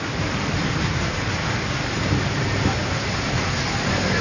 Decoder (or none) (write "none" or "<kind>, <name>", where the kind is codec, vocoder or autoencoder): vocoder, BigVGAN v2